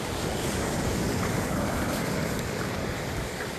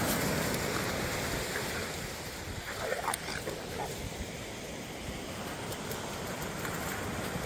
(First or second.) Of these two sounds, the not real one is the first